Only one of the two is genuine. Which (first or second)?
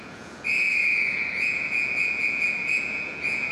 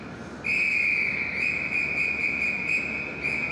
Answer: second